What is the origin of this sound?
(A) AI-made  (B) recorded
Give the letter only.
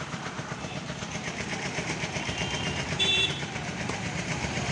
A